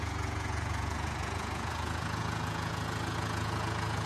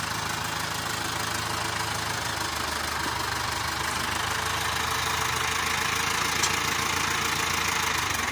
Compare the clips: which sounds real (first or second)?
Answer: second